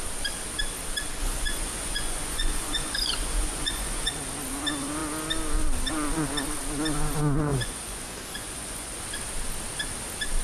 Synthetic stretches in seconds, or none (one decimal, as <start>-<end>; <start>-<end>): 1.2-4.1; 7.5-9.0